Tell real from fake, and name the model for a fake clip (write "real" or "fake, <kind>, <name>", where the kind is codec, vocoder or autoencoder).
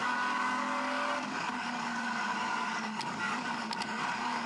fake, codec, DAC